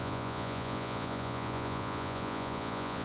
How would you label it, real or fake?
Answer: fake